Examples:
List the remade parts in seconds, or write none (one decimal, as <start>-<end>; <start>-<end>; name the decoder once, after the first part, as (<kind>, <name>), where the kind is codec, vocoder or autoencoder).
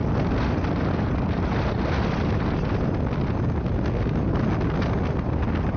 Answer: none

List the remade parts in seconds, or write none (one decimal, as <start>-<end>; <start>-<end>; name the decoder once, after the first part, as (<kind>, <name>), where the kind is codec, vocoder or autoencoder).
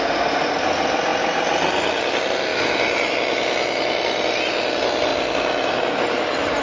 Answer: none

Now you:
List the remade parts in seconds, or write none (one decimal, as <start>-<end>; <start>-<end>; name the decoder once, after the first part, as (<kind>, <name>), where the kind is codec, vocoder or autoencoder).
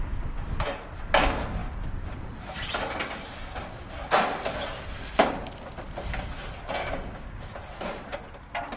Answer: 6.8-7.4 (codec, DAC)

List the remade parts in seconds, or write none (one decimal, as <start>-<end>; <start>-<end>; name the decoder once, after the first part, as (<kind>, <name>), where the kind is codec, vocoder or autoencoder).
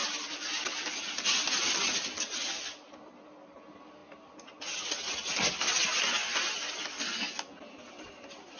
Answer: none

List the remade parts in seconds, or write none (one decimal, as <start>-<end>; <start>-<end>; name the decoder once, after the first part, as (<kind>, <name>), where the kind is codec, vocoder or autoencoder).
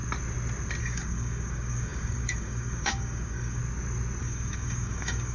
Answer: 0.8-3.6 (codec, DAC); 4.2-5.3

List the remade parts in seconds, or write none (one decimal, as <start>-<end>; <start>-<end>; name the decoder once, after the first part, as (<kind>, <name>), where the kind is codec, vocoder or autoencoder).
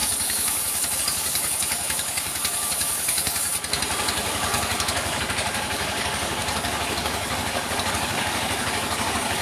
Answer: 0.0-3.5 (codec, DAC); 4.0-9.4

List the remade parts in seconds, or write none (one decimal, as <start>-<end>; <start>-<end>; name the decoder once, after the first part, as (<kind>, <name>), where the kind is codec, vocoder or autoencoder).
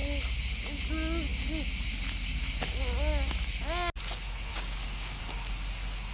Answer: 4.5-5.2 (codec, DAC)